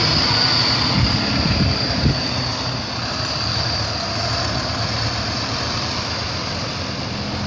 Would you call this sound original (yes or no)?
yes